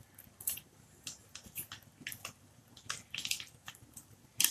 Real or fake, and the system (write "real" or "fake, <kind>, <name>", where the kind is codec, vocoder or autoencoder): real